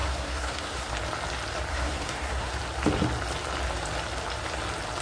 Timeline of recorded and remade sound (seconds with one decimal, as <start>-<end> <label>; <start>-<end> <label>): 0.0-0.9 remade; 0.9-1.7 recorded; 1.7-2.5 remade; 2.5-5.0 recorded